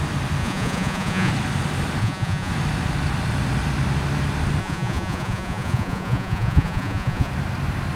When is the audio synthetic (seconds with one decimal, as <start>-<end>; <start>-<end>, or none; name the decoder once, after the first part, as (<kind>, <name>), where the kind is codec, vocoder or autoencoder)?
0.4-1.3 (vocoder, Vocos); 2.0-2.5; 4.6-7.3